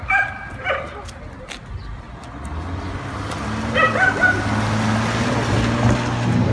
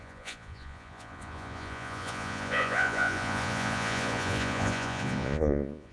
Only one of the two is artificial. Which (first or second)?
second